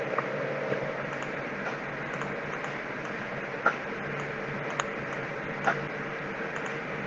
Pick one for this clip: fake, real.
real